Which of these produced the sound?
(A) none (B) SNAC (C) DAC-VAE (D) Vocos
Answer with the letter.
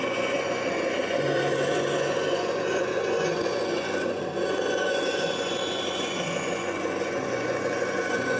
D